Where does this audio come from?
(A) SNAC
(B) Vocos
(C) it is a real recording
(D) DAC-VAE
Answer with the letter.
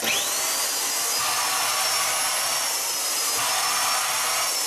C